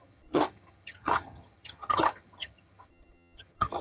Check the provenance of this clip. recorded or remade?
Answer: remade